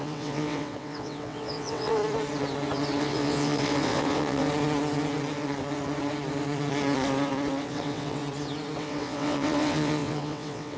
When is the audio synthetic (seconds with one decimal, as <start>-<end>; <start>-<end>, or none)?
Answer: 0.0-2.0; 3.0-4.4; 7.6-8.2; 8.8-10.8